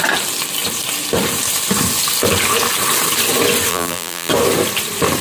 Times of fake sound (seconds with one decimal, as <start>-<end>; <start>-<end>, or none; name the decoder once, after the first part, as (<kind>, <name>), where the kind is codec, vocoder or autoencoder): 3.7-4.3 (vocoder, BigVGAN v2)